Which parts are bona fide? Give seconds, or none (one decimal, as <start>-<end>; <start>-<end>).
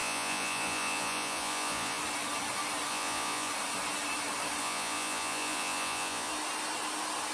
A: 2.0-2.9; 3.5-4.6; 6.3-7.3